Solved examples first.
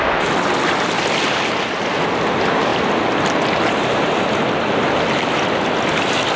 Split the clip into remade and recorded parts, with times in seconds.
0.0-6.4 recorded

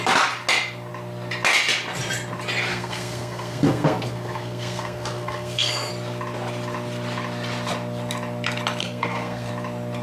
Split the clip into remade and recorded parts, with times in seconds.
0.0-2.7 recorded; 2.7-5.9 remade; 5.9-8.8 recorded; 8.8-9.5 remade; 9.5-10.0 recorded

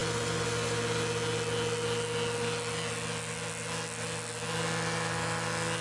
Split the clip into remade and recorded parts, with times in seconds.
0.0-5.8 recorded

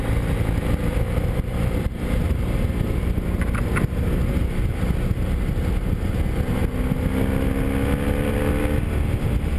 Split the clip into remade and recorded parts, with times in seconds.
0.0-9.6 recorded

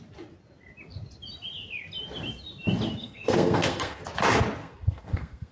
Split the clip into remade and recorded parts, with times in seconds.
0.0-3.0 recorded; 3.0-4.0 remade; 4.0-4.6 recorded; 4.6-5.5 remade

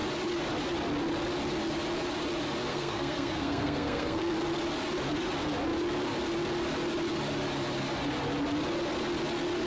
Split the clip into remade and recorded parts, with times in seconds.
0.0-2.7 recorded; 2.7-4.3 remade; 4.3-9.7 recorded

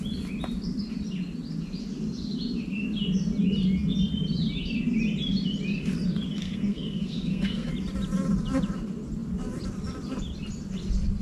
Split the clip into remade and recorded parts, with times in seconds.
0.0-6.4 recorded; 6.4-7.7 remade; 7.7-11.2 recorded

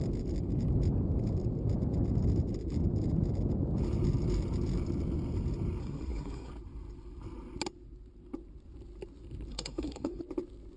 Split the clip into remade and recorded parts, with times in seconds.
0.0-5.8 recorded; 5.8-6.5 remade; 6.5-9.5 recorded; 9.5-10.2 remade; 10.2-10.8 recorded